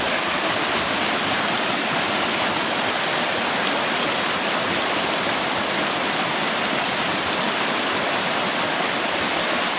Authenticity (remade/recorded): recorded